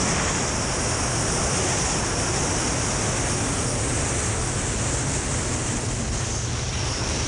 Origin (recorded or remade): recorded